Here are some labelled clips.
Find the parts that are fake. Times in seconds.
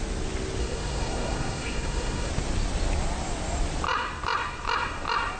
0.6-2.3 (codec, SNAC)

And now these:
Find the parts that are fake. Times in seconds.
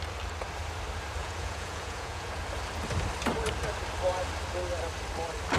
1.2-2.4 (vocoder, Vocos)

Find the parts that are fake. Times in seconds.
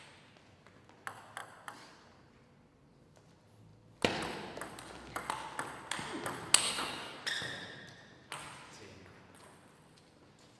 6.6-7.2 (codec, SNAC)